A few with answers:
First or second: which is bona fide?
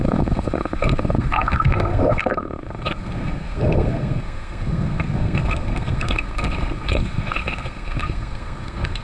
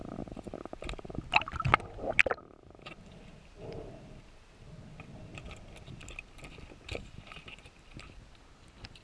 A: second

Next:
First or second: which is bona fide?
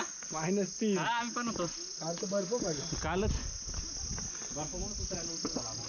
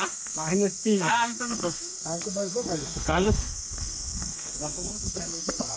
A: first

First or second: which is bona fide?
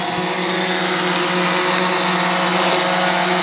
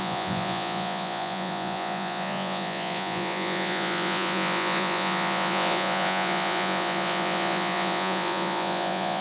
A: first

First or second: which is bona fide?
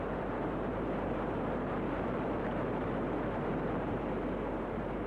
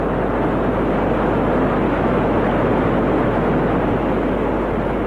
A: second